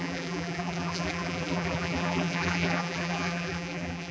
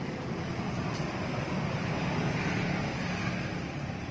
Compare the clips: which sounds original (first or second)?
second